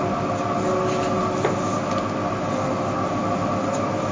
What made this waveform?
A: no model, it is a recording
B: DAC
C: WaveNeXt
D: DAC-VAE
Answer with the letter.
A